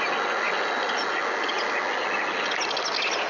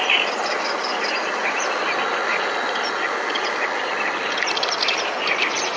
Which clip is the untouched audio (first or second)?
first